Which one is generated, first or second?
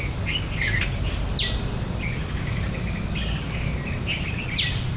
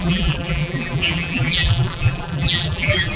second